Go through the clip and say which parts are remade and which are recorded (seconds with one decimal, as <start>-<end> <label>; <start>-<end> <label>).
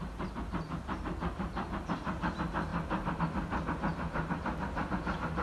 0.0-5.4 recorded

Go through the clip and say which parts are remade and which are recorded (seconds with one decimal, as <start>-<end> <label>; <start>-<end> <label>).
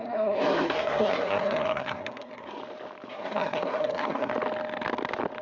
0.0-2.6 remade; 2.6-3.1 recorded; 3.1-4.3 remade; 4.3-5.4 recorded